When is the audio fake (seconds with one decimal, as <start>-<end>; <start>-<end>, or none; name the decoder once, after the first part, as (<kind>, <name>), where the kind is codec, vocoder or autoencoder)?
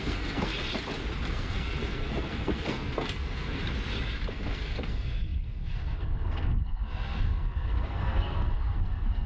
0.0-0.5 (codec, SNAC); 1.3-3.6; 4.3-9.3